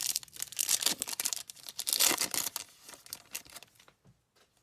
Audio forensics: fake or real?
real